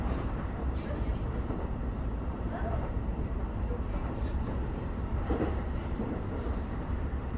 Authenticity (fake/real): fake